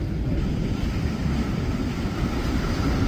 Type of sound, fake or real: real